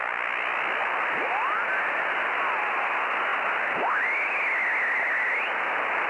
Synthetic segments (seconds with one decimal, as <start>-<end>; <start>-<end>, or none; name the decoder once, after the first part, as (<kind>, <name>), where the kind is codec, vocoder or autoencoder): none